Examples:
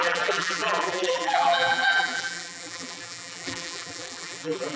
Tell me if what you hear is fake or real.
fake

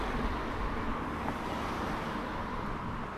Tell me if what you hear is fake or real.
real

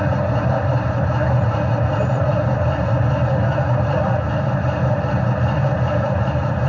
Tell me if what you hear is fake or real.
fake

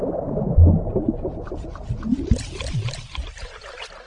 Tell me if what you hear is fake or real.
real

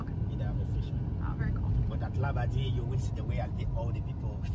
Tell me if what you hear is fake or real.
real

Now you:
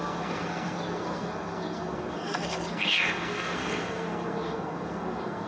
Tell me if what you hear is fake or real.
fake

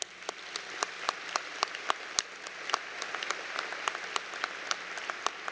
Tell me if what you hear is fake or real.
real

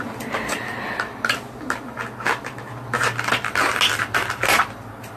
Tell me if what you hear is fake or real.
real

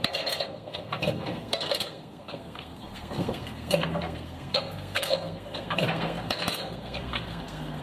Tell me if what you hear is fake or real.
fake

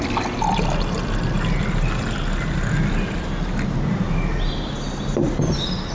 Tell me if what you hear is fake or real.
real